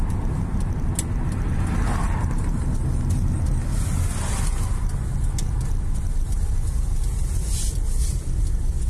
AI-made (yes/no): no